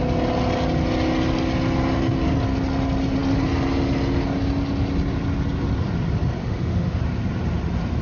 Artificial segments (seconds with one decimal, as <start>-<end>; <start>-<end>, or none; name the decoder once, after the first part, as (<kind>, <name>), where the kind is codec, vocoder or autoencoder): 6.4-7.0 (autoencoder, DAC-VAE)